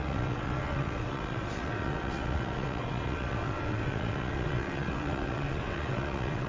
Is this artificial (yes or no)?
yes